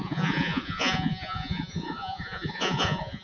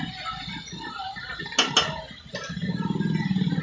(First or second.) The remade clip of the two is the first